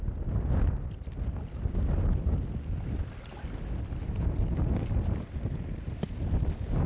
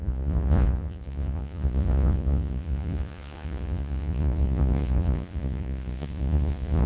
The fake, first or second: second